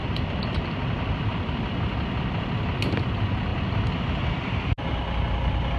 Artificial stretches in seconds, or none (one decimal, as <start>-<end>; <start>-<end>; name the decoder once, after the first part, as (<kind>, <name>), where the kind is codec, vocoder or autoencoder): 0.0-1.1 (vocoder, BigVGAN v2)